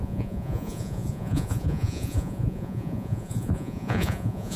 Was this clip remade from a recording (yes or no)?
yes